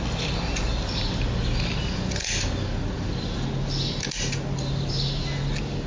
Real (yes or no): yes